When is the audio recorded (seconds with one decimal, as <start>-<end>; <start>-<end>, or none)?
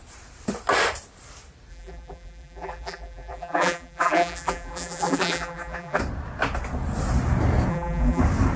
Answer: 0.0-1.7; 6.0-7.7; 8.2-8.6